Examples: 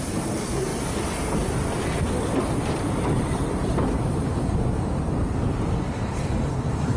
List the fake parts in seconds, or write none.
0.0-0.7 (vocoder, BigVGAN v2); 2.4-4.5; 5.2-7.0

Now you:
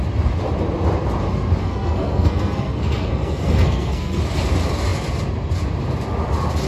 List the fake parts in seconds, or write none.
1.6-4.2 (codec, SNAC)

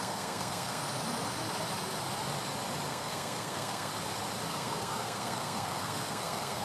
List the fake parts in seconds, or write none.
0.0-0.8 (codec, SNAC); 2.9-3.9; 4.5-6.6

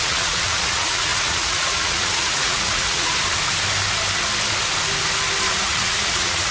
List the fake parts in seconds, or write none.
0.0-3.1 (vocoder, Vocos); 5.5-6.5